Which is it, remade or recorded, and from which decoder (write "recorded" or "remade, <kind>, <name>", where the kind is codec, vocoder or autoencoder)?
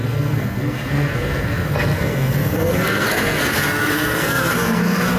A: remade, codec, SNAC